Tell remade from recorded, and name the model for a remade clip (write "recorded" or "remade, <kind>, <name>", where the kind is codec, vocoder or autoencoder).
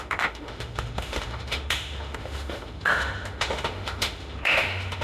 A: remade, autoencoder, DAC-VAE